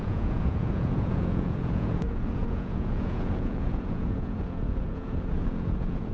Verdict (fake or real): fake